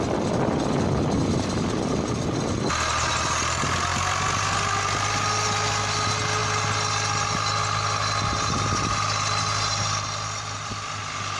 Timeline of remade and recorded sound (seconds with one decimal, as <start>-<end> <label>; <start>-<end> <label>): 0.0-11.4 recorded